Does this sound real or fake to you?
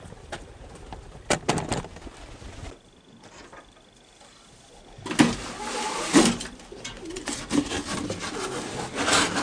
real